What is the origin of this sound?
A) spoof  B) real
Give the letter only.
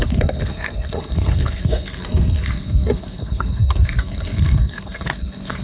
A